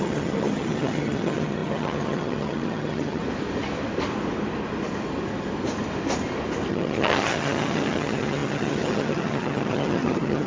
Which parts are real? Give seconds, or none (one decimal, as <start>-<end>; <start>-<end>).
3.2-6.7